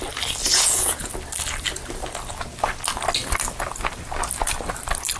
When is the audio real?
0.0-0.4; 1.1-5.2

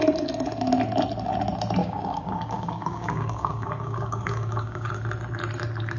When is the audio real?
0.0-1.8; 4.9-6.0

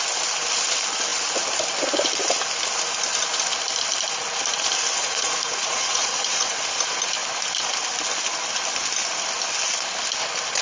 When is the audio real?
0.0-4.9; 6.5-10.6

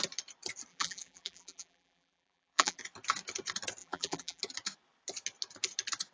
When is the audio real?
0.0-0.7; 2.8-3.8; 4.4-6.1

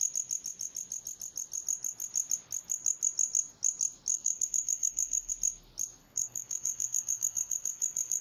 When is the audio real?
0.0-4.1; 5.3-6.0

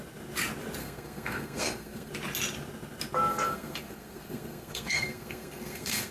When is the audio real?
0.0-0.8; 2.1-3.3

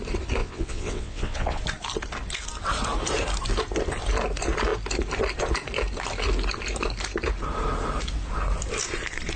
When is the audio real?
0.0-0.4; 1.6-9.4

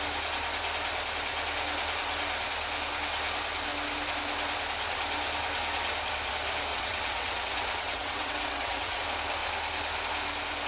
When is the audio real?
0.0-6.7; 9.0-10.7